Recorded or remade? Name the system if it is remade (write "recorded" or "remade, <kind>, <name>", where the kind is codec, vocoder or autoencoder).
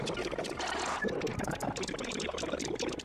remade, vocoder, BigVGAN v2